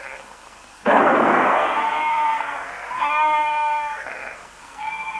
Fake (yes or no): yes